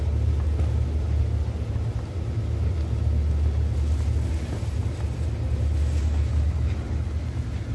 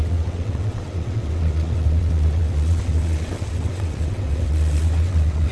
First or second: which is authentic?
first